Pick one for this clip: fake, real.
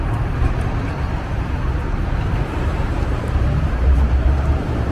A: fake